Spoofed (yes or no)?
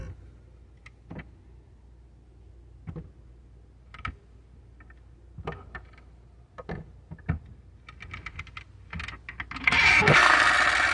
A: no